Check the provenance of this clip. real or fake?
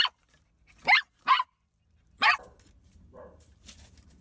real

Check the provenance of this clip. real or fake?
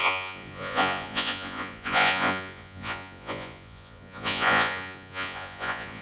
fake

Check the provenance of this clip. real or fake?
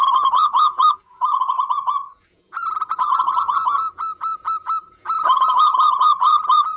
fake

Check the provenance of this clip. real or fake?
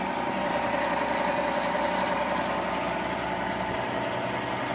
real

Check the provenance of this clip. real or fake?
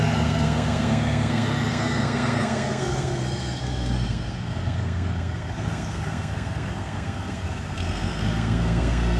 fake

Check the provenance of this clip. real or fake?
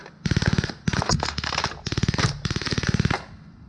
real